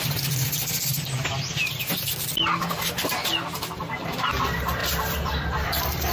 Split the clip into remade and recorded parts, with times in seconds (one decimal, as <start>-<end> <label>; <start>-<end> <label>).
0.0-4.8 recorded; 4.8-6.1 remade